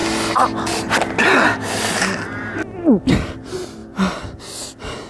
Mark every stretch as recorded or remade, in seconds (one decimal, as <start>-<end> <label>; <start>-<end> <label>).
0.0-5.1 recorded